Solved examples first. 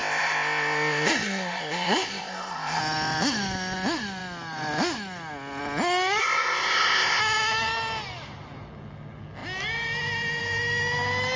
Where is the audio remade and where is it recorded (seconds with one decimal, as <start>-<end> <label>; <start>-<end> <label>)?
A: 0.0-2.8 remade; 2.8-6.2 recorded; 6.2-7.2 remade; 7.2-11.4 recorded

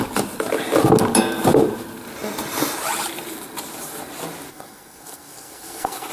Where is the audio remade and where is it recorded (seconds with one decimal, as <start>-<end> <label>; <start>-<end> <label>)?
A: 0.0-4.5 recorded; 4.5-6.1 remade

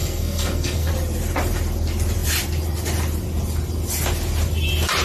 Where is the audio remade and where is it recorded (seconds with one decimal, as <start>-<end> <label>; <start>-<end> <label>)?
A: 0.0-0.9 remade; 0.9-5.0 recorded

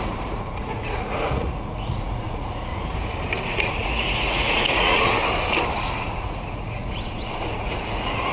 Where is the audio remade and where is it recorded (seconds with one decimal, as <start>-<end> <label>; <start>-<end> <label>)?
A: 0.0-2.7 remade; 2.7-3.4 recorded; 3.4-5.2 remade; 5.2-5.8 recorded; 5.8-8.3 remade